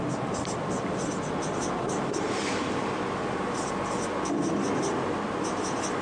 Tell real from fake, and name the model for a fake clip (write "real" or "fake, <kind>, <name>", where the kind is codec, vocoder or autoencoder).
real